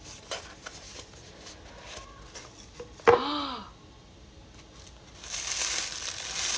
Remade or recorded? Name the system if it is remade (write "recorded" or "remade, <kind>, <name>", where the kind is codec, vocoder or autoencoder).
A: recorded